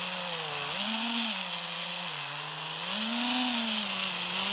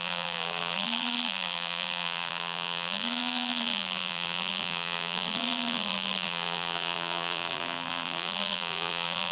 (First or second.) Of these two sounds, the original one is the first